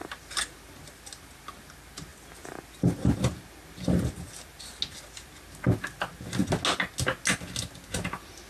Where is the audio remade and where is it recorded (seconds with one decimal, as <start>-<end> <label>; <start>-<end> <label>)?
0.0-8.5 recorded